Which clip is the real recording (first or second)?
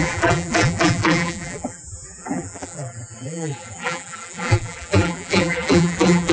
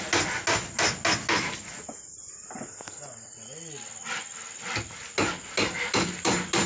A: second